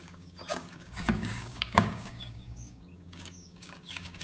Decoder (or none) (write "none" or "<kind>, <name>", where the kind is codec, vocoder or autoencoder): codec, DAC